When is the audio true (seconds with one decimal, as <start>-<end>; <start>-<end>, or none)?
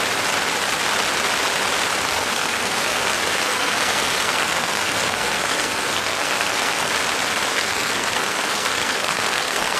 0.0-2.1; 6.9-7.5